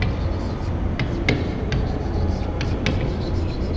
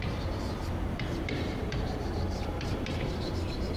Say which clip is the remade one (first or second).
second